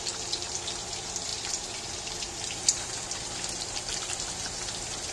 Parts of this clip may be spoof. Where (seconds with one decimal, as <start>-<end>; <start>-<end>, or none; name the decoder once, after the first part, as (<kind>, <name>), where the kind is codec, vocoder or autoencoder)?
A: 0.0-5.1 (vocoder, BigVGAN v2)